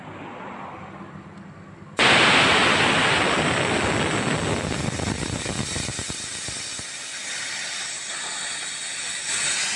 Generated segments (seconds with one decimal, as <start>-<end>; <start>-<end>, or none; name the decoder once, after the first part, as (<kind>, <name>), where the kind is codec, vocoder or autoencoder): none